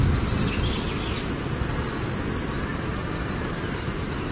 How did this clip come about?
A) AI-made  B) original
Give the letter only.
B